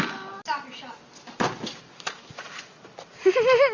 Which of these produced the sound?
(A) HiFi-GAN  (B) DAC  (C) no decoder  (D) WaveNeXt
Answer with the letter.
C